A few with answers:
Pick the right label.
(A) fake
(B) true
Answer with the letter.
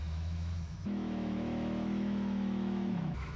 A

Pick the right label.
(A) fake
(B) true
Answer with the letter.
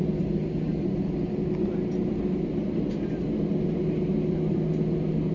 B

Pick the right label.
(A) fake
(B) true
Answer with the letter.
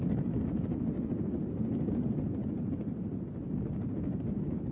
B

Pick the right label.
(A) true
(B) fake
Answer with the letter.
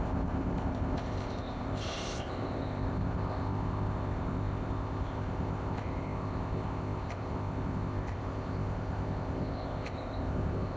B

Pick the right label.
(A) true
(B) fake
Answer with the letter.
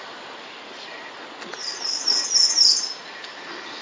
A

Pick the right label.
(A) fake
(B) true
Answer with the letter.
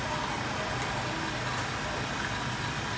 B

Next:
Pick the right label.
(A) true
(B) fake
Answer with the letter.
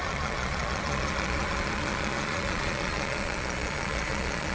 B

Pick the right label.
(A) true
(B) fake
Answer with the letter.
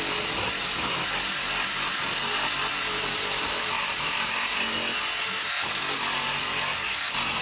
A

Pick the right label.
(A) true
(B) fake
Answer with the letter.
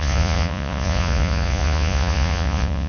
B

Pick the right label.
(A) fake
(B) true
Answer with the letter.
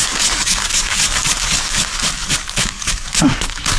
A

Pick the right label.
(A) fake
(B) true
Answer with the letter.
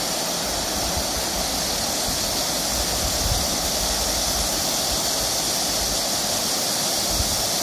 B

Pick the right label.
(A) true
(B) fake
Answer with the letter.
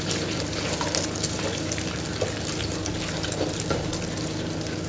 A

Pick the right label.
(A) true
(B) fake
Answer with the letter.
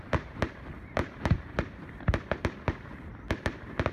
B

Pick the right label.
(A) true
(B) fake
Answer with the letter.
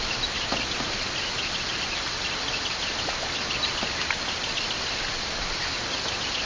A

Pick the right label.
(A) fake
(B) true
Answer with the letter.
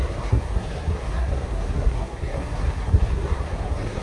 A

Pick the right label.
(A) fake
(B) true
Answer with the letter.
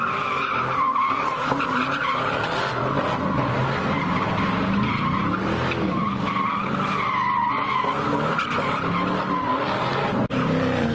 B